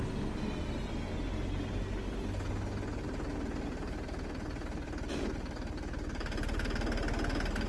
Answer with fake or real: real